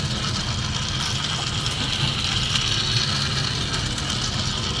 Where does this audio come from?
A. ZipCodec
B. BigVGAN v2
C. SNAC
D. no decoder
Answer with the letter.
D